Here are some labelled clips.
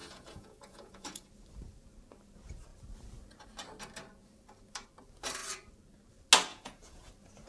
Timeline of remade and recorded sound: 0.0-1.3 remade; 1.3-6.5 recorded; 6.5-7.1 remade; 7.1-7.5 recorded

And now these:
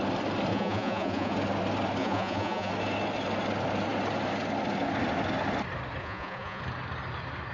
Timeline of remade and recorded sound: 0.0-0.5 recorded; 0.5-1.3 remade; 1.3-2.0 recorded; 2.0-2.7 remade; 2.7-6.0 recorded; 6.0-6.6 remade; 6.6-7.5 recorded

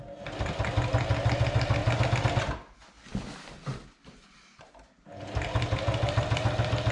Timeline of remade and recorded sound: 0.0-6.9 recorded

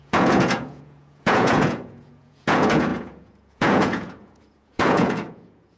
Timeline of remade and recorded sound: 0.0-5.8 remade

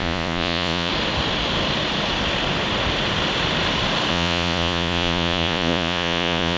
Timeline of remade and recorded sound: 0.0-0.9 remade; 0.9-4.1 recorded; 4.1-6.6 remade

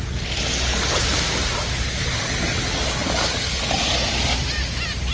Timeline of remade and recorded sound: 0.0-5.1 recorded

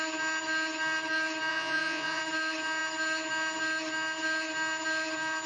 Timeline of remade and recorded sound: 0.0-1.5 recorded; 1.5-2.2 remade; 2.2-5.5 recorded